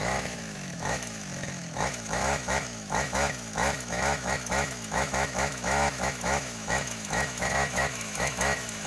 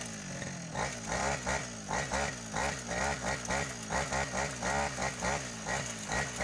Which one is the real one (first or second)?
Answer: second